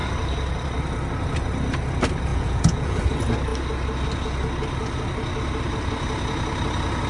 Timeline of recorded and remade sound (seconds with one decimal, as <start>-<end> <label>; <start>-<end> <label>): 0.0-2.3 recorded; 2.3-3.0 remade; 3.0-7.1 recorded

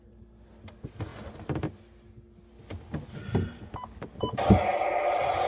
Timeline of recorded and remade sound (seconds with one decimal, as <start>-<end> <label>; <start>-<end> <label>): 0.0-5.5 recorded

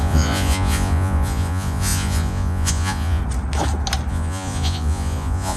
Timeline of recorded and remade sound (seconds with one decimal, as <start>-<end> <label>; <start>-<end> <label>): 0.0-3.2 remade; 3.2-4.1 recorded; 4.1-5.6 remade

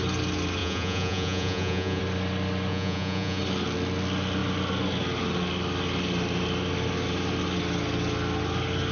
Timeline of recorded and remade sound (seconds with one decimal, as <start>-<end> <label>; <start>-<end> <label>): 0.0-0.6 recorded; 0.6-2.0 remade; 2.0-2.7 recorded; 2.7-3.4 remade; 3.4-8.9 recorded

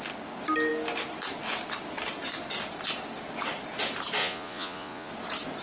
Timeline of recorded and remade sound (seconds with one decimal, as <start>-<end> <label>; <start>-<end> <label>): 0.0-4.2 recorded; 4.2-5.1 remade; 5.1-5.6 recorded

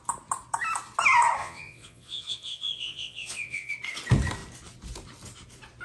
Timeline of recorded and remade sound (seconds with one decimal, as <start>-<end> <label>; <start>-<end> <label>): 0.0-1.4 recorded; 1.4-3.7 remade; 3.7-5.8 recorded